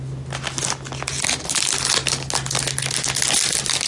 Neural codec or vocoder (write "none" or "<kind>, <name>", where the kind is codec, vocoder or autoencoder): none